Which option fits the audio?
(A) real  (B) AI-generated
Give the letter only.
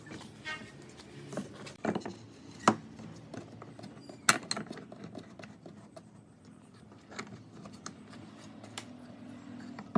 A